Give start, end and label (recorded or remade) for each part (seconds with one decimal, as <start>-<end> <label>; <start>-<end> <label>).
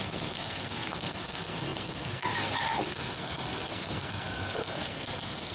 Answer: 0.0-5.5 remade